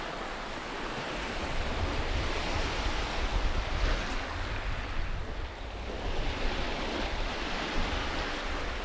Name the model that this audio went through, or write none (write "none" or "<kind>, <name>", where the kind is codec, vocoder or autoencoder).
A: none